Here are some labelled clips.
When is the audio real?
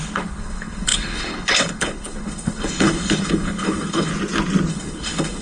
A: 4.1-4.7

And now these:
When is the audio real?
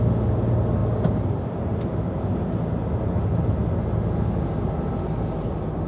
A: 0.0-5.9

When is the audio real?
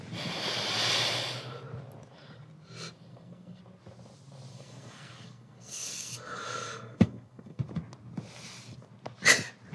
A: 0.0-3.1; 3.6-4.5; 7.6-9.7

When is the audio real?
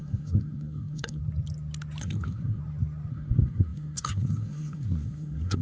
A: 1.2-2.0; 2.6-3.1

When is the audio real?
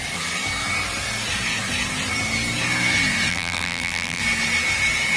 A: 0.0-3.3; 4.2-5.2